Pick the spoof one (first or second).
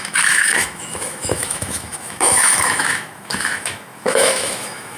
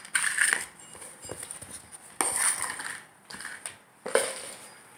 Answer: first